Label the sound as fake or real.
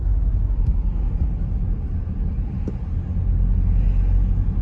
real